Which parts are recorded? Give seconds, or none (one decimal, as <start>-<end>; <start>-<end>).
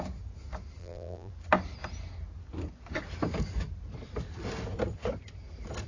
0.0-0.8; 1.3-5.9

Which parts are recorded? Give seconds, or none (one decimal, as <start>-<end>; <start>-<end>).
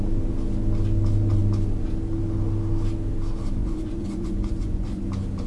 0.0-3.6; 5.0-5.5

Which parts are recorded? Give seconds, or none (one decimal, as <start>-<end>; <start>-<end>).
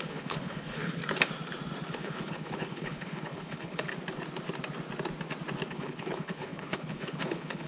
1.0-1.9; 3.9-5.7